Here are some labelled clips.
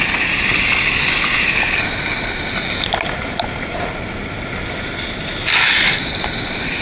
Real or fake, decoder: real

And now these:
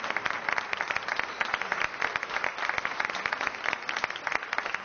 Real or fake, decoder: real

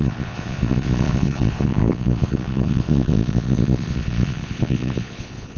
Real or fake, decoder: fake, vocoder, Vocos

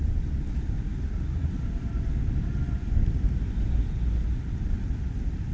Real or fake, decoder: real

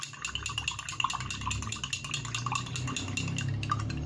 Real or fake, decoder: real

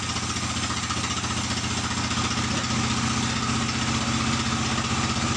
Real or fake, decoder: real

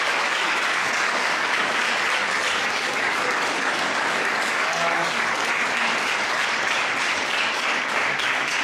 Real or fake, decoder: fake, codec, DAC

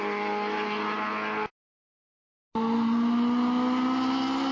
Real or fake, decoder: real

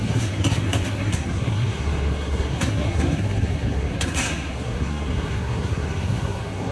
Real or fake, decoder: fake, codec, SNAC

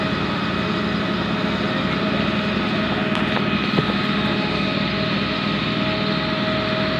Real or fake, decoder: real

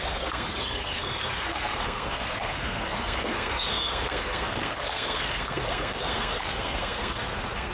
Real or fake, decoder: fake, codec, SNAC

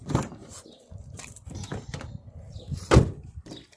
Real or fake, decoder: fake, vocoder, BigVGAN v2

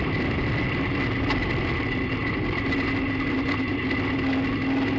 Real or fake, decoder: real